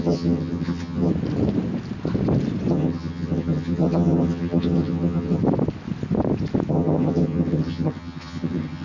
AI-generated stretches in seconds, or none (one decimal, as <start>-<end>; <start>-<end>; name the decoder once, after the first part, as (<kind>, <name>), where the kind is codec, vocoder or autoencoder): 0.0-1.1 (vocoder, HiFi-GAN); 2.7-5.4; 6.7-8.8